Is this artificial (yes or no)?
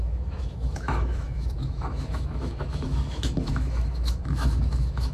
yes